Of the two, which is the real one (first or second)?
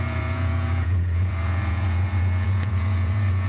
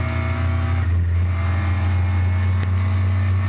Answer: second